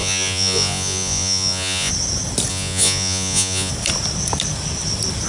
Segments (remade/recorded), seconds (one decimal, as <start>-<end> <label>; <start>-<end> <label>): 0.0-1.9 remade; 1.9-2.5 recorded; 2.5-3.7 remade; 3.7-5.3 recorded